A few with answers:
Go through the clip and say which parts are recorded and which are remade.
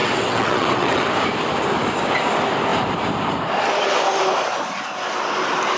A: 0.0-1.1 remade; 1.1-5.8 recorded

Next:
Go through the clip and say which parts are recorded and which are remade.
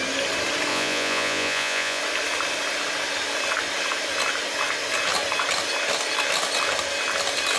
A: 0.0-0.7 recorded; 0.7-2.0 remade; 2.0-7.6 recorded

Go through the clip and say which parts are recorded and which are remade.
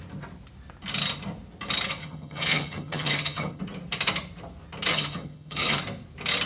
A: 0.0-2.0 recorded; 2.0-3.6 remade; 3.6-4.9 recorded; 4.9-5.8 remade; 5.8-6.5 recorded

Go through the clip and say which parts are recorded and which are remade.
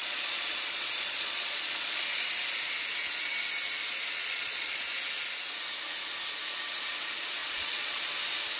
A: 0.0-2.0 remade; 2.0-4.2 recorded; 4.2-4.8 remade; 4.8-7.4 recorded; 7.4-8.0 remade; 8.0-8.6 recorded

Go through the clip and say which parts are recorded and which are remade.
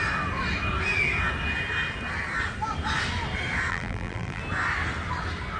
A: 0.0-3.7 recorded; 3.7-4.4 remade; 4.4-5.6 recorded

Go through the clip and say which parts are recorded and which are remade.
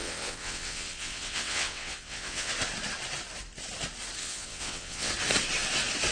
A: 0.0-2.5 remade; 2.5-4.2 recorded; 4.2-5.1 remade; 5.1-6.1 recorded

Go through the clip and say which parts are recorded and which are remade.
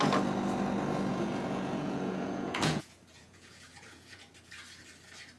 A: 0.0-1.1 recorded; 1.1-4.3 remade; 4.3-5.4 recorded